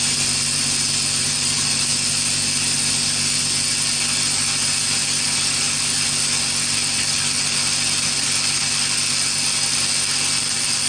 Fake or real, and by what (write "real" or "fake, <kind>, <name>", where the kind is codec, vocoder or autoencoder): real